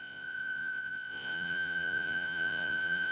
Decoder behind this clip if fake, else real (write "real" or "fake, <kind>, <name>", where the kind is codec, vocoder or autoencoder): fake, vocoder, Vocos